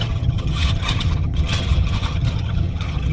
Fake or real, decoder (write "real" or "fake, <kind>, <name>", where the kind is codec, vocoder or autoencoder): fake, vocoder, HiFi-GAN